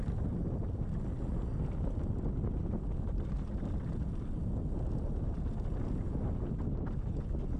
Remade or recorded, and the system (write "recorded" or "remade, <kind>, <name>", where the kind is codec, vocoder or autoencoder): recorded